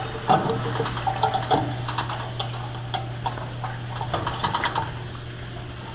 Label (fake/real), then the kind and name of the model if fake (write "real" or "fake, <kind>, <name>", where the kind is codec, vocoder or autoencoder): real